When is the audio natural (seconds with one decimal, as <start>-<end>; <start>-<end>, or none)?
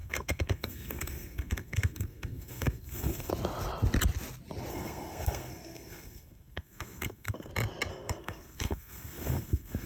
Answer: 3.3-4.7; 7.5-7.9